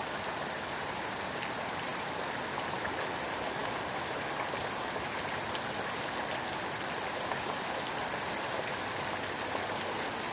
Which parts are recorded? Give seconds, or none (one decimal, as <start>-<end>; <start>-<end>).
0.0-10.3